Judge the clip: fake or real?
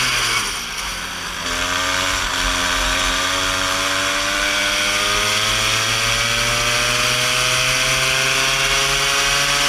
real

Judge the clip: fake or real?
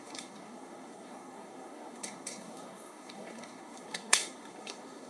fake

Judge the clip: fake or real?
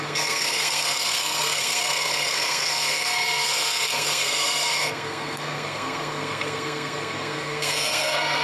fake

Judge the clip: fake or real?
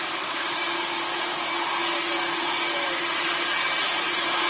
real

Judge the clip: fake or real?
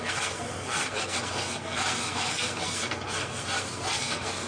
fake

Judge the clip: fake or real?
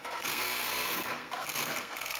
fake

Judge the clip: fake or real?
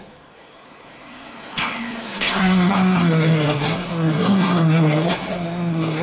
fake